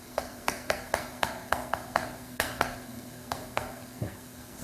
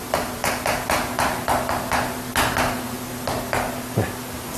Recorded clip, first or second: second